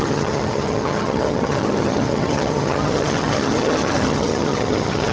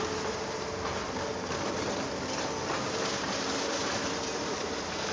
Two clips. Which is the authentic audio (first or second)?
second